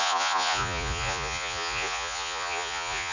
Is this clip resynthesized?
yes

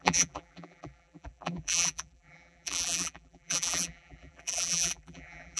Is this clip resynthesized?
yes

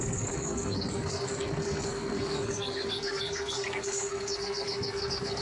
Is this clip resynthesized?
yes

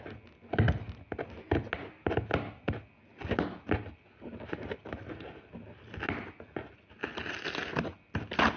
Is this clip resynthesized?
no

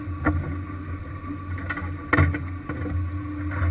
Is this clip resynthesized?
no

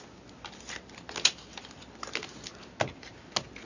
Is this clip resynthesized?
no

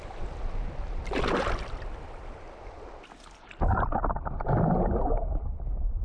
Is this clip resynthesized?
no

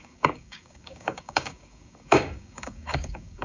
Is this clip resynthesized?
yes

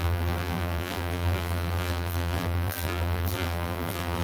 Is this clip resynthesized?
yes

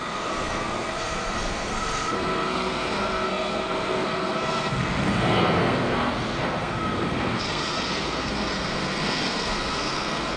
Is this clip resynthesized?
yes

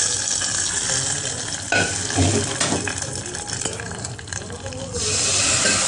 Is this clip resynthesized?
no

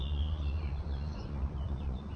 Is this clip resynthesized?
yes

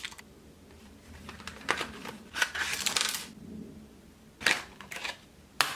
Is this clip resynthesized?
yes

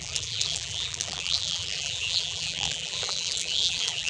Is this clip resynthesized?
yes